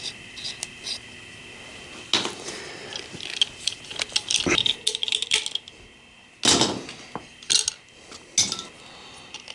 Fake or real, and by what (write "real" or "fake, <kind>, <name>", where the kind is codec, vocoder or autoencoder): real